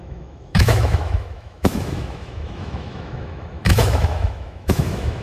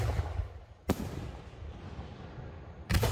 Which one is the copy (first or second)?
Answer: first